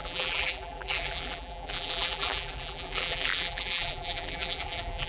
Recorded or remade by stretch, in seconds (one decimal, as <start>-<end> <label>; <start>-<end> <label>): 0.0-5.1 remade